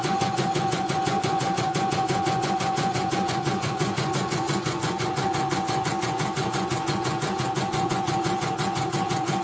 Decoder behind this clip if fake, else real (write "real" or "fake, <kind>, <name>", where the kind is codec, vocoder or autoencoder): fake, vocoder, Vocos